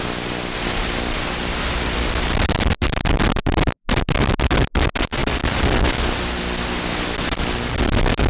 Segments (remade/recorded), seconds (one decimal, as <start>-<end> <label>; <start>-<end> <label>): 0.0-8.3 recorded